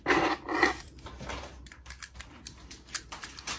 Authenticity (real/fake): real